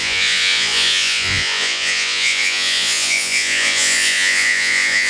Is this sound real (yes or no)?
no